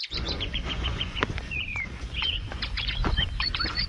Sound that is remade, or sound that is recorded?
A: remade